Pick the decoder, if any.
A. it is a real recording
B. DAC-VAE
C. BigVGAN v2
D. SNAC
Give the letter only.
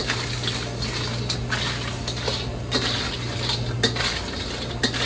A